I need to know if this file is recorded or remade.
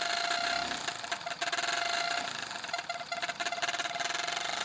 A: recorded